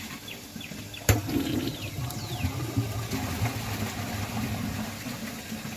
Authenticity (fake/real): real